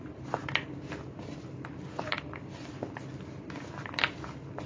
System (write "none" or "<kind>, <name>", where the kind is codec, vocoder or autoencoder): none